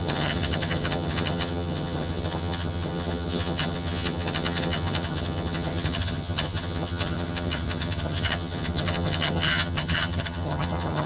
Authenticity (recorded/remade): remade